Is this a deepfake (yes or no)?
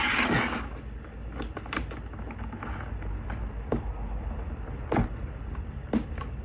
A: no